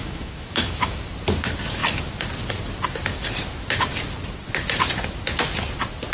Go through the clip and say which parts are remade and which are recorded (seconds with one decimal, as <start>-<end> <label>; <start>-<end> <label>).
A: 0.0-1.1 remade; 1.1-6.1 recorded